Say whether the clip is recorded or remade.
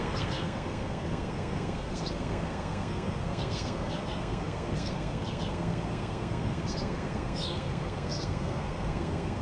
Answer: remade